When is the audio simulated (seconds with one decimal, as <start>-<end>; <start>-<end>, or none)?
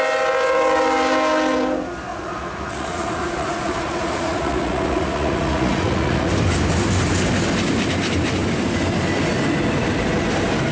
2.1-6.3